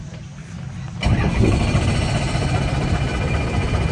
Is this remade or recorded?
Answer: recorded